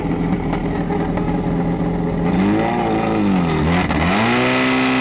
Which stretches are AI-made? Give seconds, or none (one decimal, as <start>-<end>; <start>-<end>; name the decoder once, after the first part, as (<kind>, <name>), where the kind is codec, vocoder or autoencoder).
none